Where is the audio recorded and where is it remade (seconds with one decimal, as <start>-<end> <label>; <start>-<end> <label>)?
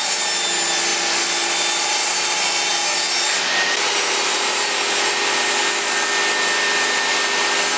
0.0-7.8 recorded